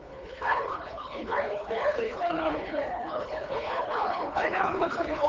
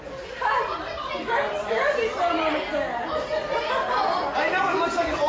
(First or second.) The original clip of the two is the second